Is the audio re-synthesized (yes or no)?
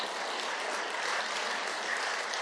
no